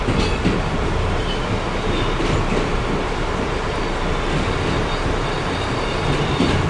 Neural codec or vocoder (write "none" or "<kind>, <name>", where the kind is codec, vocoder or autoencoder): none